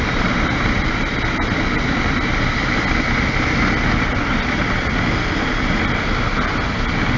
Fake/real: real